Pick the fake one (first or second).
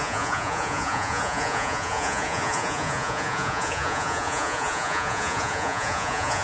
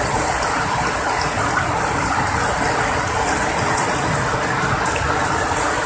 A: first